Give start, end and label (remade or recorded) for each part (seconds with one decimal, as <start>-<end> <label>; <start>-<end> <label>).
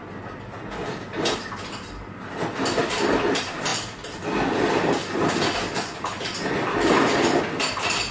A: 0.0-8.1 recorded